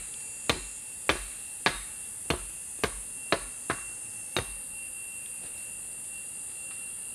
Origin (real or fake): real